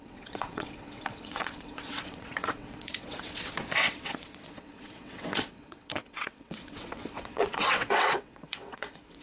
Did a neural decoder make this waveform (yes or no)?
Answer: yes